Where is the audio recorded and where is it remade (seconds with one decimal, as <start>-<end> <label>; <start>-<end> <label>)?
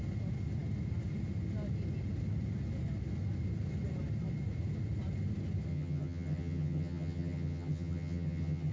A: 0.0-5.7 recorded; 5.7-8.7 remade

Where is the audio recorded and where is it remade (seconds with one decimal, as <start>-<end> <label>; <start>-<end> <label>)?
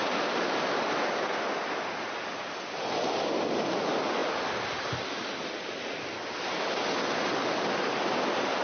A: 0.0-8.6 recorded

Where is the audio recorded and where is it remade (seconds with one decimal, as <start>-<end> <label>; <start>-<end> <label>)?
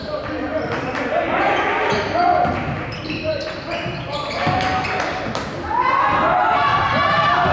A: 0.0-7.5 recorded